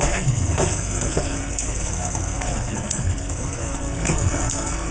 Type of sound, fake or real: fake